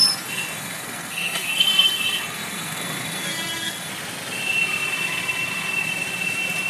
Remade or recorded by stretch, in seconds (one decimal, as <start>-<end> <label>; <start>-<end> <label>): 0.0-3.9 remade; 3.9-6.7 recorded